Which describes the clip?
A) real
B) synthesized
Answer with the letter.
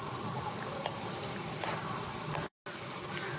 A